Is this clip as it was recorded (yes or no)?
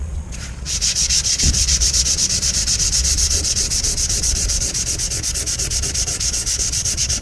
no